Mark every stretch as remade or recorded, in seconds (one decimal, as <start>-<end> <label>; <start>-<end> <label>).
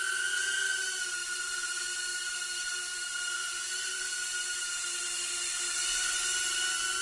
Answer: 0.0-1.2 recorded; 1.2-4.1 remade; 4.1-7.0 recorded